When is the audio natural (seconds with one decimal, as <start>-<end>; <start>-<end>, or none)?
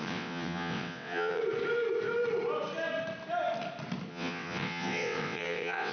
1.4-4.1